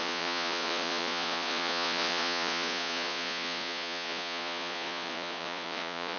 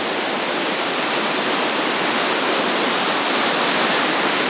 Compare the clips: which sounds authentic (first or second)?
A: second